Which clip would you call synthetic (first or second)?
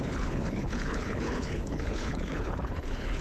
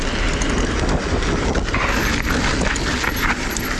first